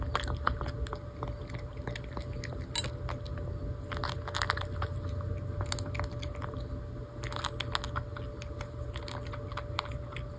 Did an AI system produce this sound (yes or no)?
no